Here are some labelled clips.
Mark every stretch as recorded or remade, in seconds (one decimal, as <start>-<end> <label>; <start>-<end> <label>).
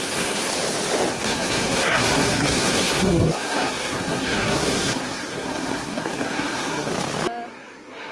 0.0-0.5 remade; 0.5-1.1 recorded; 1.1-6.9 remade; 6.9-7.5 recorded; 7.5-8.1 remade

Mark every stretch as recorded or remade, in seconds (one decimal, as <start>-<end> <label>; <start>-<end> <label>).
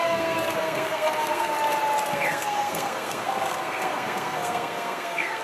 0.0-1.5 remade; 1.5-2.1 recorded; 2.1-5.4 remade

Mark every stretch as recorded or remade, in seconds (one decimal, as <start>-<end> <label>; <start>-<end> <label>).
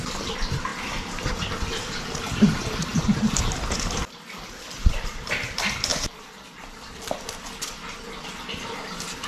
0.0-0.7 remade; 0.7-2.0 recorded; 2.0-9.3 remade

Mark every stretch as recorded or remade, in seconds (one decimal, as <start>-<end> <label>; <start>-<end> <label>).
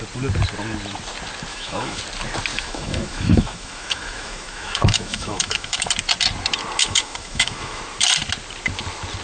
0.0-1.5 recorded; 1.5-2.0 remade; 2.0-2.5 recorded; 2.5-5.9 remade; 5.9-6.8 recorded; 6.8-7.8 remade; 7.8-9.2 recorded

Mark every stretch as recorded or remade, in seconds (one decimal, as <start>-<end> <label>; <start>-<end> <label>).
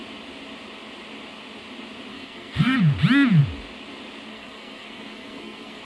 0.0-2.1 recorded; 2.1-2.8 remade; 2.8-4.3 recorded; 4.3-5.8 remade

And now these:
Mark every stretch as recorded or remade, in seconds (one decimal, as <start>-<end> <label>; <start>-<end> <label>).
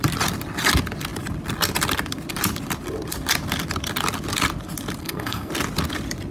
0.0-5.0 recorded; 5.0-5.5 remade; 5.5-6.3 recorded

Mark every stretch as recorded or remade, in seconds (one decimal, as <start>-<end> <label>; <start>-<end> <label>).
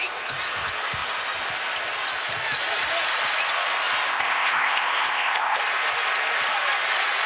0.0-4.1 recorded; 4.1-5.6 remade; 5.6-7.3 recorded